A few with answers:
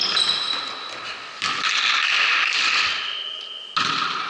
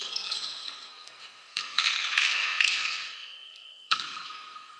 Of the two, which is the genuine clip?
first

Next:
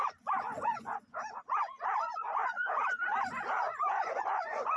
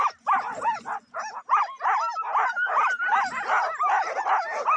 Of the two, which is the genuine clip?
second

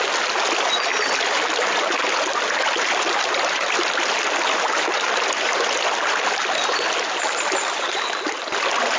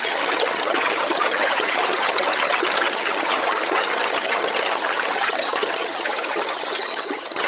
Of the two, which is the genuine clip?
first